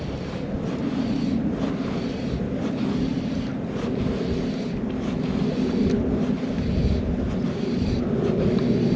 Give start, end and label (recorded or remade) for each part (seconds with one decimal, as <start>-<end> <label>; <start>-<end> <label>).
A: 0.0-9.0 recorded